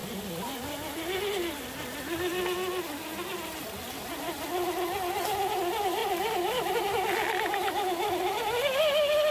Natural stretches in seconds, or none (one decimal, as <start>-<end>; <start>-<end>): 0.0-9.3

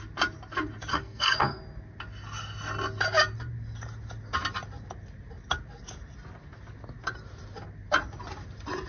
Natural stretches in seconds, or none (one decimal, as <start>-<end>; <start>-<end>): 0.0-0.9; 1.6-8.9

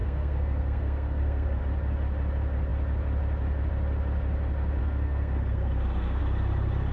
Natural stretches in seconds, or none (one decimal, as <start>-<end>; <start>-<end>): 1.6-4.8; 6.2-6.9

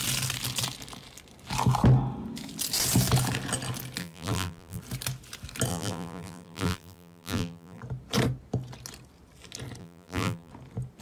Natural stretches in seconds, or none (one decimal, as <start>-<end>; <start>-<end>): 0.0-4.0; 4.8-5.7; 7.8-9.8; 10.5-11.0

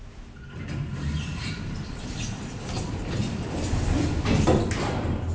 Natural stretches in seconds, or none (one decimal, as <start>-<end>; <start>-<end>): 0.0-0.9; 4.1-5.3

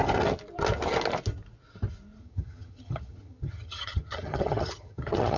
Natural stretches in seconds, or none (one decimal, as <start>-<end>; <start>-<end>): 0.0-2.2